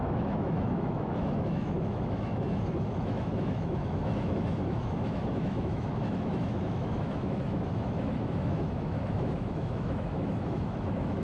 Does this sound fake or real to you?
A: fake